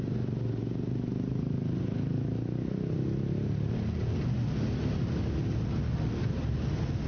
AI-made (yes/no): no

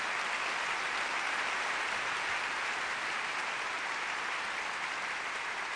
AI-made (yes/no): no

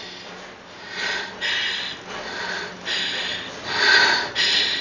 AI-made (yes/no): no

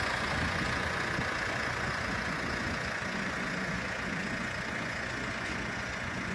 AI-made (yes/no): yes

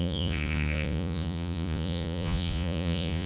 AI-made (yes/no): yes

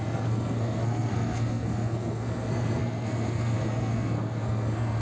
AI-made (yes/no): yes